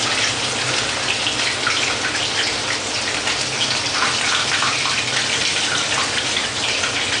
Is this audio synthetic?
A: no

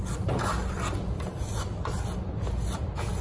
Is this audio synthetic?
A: no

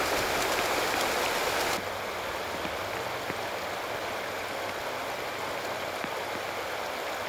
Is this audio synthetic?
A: no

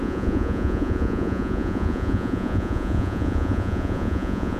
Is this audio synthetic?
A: yes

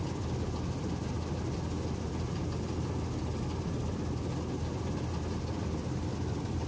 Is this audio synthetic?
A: no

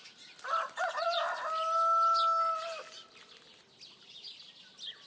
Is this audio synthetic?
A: no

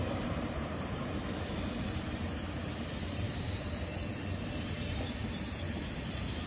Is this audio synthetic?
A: yes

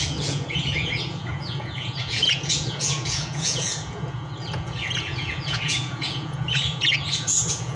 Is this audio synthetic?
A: yes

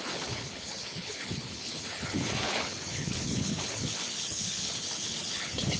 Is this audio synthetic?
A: yes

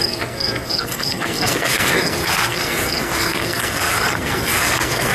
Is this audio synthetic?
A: yes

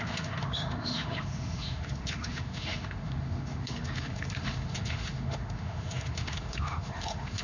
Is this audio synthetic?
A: yes